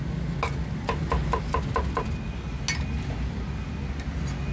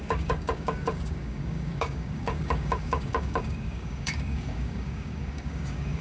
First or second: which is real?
first